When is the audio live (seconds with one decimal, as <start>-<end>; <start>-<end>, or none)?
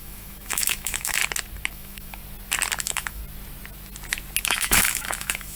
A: 1.2-1.7; 2.2-2.8; 3.2-4.4